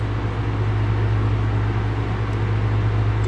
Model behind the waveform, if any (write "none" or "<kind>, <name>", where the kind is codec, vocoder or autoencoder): none